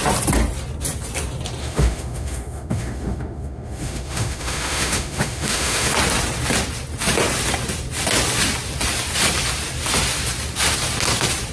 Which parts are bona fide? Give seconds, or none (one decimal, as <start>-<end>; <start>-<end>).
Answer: 0.0-1.6; 5.9-11.5